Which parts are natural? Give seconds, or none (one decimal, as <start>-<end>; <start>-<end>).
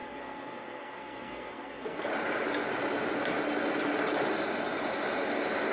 2.1-5.7